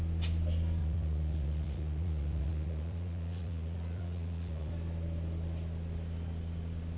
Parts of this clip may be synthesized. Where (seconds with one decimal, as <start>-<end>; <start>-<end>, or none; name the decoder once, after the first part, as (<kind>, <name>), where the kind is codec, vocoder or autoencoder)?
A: 0.8-4.7 (vocoder, Vocos)